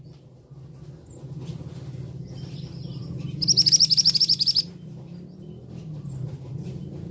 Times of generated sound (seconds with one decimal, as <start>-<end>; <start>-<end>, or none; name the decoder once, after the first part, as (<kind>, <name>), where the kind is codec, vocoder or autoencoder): none